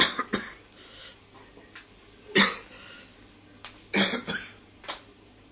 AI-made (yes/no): no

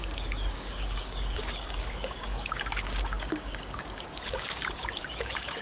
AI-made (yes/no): yes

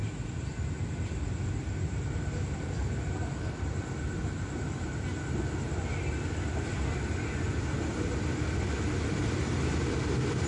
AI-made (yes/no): no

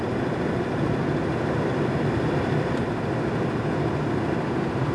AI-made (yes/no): no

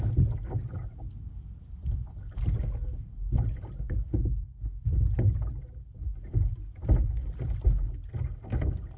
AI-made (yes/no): no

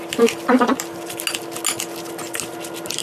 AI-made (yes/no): no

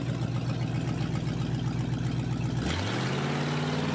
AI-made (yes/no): no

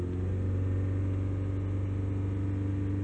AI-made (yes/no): no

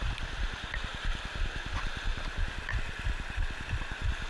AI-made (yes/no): no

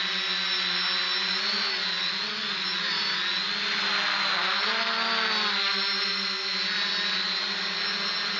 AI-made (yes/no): no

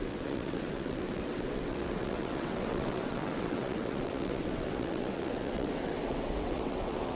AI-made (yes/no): yes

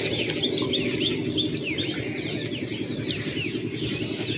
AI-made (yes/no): no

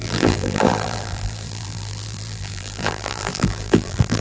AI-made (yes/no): yes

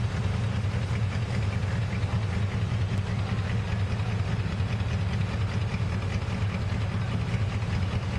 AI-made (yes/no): no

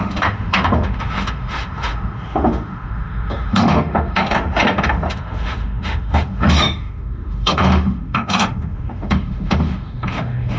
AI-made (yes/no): yes